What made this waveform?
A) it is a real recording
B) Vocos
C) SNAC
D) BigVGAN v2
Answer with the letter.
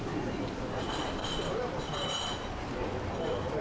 A